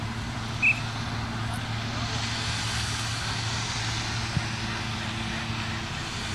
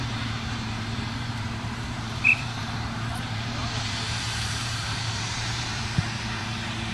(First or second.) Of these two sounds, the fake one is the second